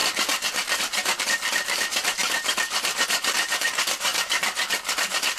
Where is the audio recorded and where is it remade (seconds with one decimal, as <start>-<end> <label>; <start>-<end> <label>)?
0.0-4.1 remade; 4.1-4.9 recorded; 4.9-5.4 remade